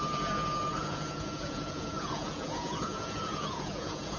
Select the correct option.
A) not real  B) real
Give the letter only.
A